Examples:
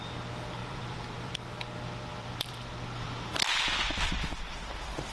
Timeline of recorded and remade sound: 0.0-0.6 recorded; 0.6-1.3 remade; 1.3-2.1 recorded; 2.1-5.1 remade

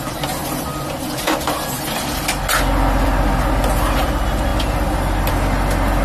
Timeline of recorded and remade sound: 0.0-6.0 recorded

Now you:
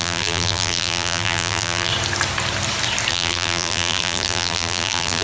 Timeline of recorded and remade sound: 0.0-1.9 remade; 1.9-3.1 recorded; 3.1-5.2 remade

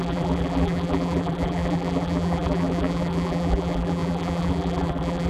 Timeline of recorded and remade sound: 0.0-5.3 remade